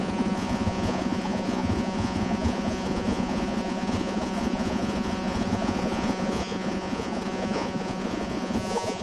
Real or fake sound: fake